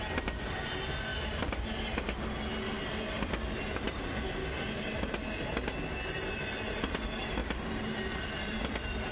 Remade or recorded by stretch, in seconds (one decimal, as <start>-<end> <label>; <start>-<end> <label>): 0.0-9.1 recorded